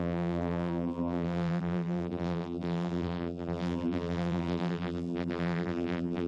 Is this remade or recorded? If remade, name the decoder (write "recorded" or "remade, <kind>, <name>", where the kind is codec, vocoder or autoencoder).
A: remade, vocoder, BigVGAN v2